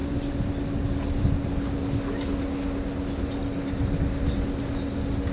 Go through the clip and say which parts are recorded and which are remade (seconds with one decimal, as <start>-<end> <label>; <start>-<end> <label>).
0.0-5.3 recorded